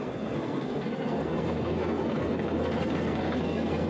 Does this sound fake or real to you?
fake